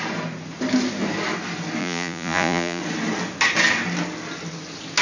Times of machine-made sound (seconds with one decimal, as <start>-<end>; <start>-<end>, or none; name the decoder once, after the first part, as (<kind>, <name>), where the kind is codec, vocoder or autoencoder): 1.8-2.8 (vocoder, Vocos)